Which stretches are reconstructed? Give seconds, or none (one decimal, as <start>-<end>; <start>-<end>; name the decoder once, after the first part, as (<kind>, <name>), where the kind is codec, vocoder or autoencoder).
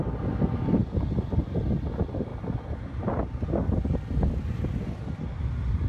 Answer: none